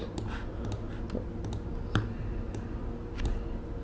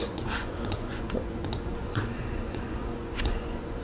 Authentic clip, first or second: first